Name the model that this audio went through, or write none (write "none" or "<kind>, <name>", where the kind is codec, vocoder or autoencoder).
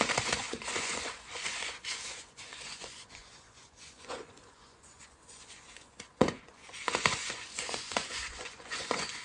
vocoder, Vocos